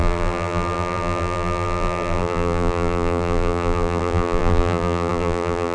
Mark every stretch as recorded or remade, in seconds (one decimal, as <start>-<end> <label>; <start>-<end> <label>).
0.0-5.7 remade